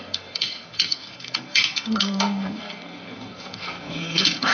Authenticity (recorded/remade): remade